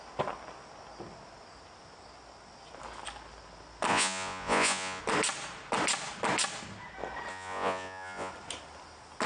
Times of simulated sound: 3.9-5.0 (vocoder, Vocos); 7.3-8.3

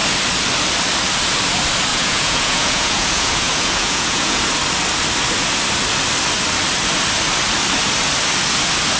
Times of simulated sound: 1.9-4.4 (vocoder, Vocos)

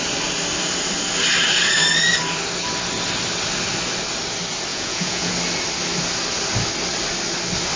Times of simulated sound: 4.7-5.3 (vocoder, Vocos)

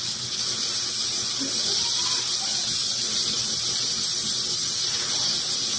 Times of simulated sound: none